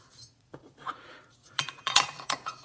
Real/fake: fake